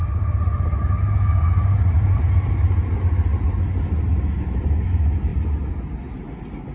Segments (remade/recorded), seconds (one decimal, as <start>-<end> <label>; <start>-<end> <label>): 0.0-6.7 recorded